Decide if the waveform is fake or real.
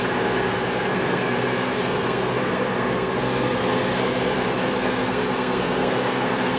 fake